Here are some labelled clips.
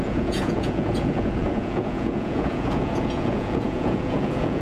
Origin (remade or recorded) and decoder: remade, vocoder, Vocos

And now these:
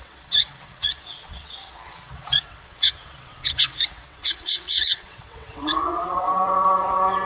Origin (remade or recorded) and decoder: remade, vocoder, WaveNeXt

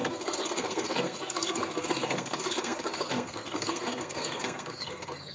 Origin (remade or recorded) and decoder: remade, codec, SNAC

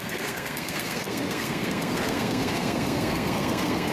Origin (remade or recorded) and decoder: remade, codec, SNAC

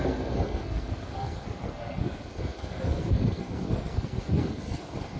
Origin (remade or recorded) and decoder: remade, codec, SNAC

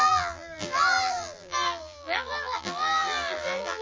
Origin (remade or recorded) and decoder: remade, vocoder, BigVGAN v2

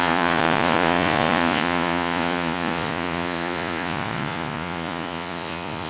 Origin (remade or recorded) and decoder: remade, vocoder, Vocos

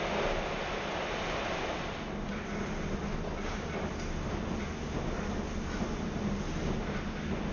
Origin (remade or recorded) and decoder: recorded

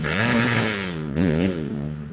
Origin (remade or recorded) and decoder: remade, vocoder, Vocos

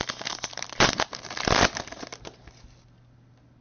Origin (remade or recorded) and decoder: recorded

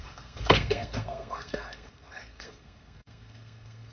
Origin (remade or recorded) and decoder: remade, codec, SNAC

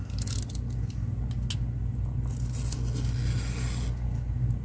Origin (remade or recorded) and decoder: recorded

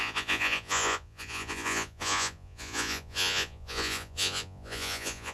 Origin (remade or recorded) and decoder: remade, vocoder, Vocos